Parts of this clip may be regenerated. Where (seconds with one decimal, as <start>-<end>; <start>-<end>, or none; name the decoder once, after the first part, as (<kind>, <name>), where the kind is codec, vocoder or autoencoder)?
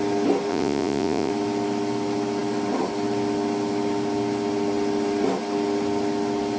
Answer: 0.5-1.3 (vocoder, Vocos)